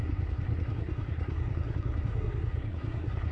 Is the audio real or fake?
fake